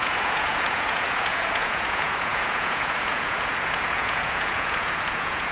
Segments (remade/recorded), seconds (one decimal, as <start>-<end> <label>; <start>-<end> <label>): 0.0-5.5 remade

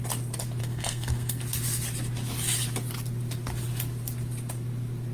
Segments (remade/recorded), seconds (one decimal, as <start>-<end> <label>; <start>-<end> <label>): 0.0-0.6 recorded; 0.6-1.4 remade; 1.4-5.1 recorded

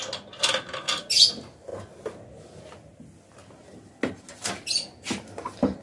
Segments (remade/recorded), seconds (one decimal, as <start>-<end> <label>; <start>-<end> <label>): 0.0-5.8 recorded

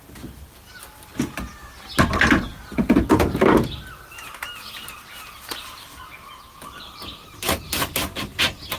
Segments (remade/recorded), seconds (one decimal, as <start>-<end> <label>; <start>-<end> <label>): 0.0-2.6 recorded; 2.6-3.4 remade; 3.4-8.8 recorded